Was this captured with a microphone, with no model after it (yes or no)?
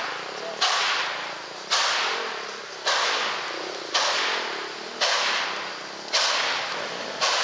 yes